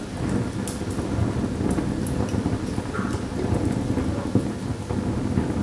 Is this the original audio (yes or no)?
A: yes